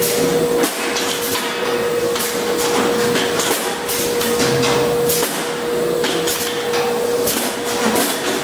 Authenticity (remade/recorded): recorded